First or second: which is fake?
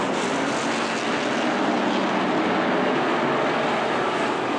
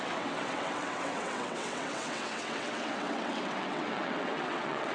second